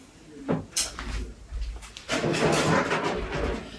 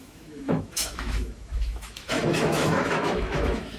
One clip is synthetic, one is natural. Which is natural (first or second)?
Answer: first